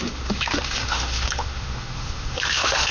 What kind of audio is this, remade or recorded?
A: remade